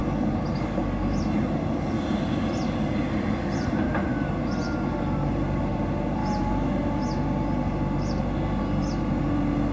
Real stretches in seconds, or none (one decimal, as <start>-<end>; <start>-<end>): 0.0-9.7